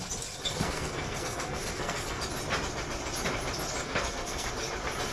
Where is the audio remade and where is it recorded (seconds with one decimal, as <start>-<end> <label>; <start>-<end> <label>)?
0.0-0.5 recorded; 0.5-2.2 remade; 2.2-3.8 recorded; 3.8-4.5 remade; 4.5-5.1 recorded